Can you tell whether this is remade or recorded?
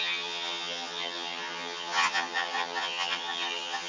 remade